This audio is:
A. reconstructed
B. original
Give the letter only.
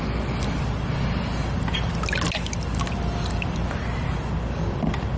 B